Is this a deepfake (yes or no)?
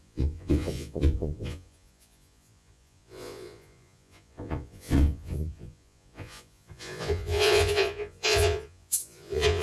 yes